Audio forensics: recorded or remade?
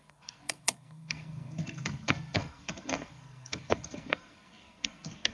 remade